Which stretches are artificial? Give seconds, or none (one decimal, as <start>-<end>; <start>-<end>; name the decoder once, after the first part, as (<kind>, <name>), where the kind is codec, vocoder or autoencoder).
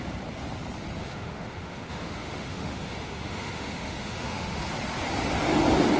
1.0-4.6 (autoencoder, DAC-VAE)